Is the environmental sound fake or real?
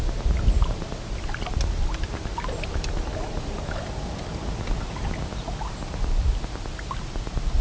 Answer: real